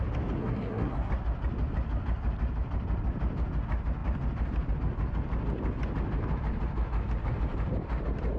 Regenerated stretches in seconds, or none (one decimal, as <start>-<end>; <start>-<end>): 0.4-1.1